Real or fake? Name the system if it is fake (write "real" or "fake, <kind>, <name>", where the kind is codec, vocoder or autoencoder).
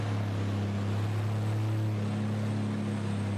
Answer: real